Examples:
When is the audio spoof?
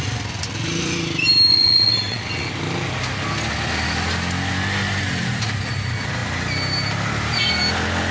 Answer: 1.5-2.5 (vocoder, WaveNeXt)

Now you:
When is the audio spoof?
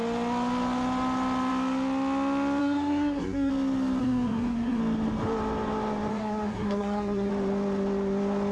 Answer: 2.6-3.5 (codec, SNAC); 4.0-4.8; 6.1-7.3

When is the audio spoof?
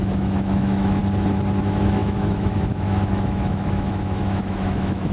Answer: 0.0-1.0 (autoencoder, DAC-VAE); 1.6-5.1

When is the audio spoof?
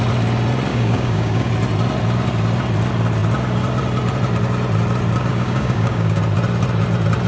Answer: 0.7-1.5 (codec, DAC); 5.3-6.2